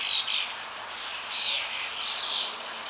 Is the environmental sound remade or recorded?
recorded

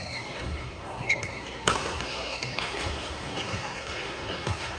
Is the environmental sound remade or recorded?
remade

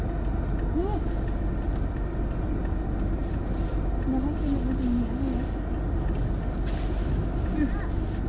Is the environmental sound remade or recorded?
recorded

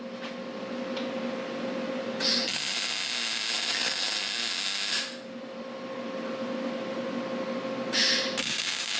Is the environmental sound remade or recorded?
recorded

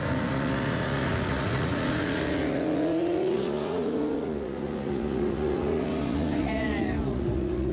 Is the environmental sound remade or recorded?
remade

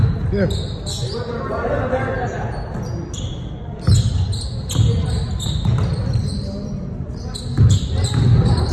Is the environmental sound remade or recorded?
recorded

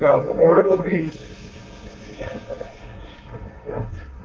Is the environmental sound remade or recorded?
remade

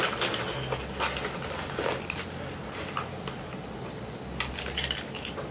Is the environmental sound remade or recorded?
recorded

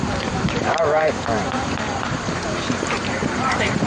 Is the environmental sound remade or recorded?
remade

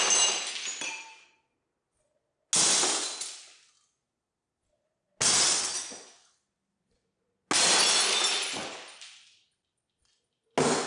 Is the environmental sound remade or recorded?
recorded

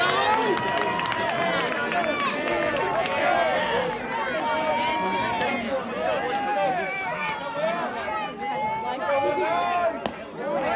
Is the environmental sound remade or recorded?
recorded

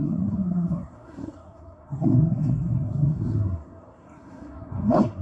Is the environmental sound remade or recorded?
remade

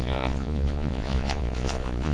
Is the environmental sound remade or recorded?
remade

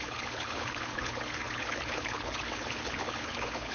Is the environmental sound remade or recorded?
remade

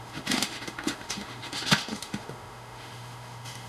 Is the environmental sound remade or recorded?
remade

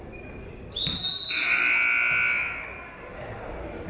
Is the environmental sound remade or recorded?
recorded